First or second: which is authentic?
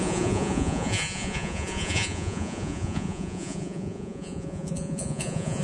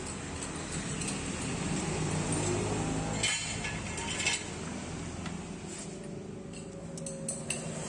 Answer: second